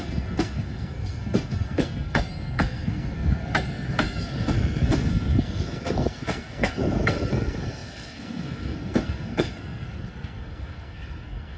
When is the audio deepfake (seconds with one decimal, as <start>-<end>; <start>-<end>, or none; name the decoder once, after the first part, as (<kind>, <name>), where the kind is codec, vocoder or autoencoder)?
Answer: 0.0-11.6 (codec, SNAC)

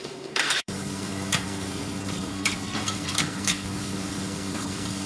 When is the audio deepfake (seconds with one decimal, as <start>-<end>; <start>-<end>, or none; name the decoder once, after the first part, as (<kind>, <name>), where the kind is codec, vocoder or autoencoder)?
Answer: 0.0-5.1 (codec, SNAC)